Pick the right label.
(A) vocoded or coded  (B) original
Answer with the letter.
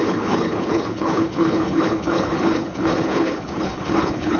A